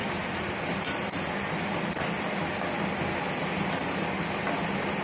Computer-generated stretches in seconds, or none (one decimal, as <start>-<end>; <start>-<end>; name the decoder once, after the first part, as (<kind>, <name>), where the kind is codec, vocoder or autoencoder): 0.0-2.3 (vocoder, BigVGAN v2); 3.4-5.0